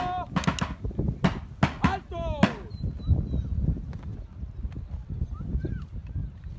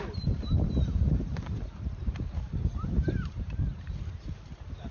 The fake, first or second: second